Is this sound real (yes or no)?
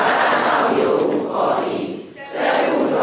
yes